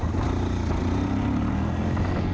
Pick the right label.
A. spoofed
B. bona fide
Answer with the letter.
B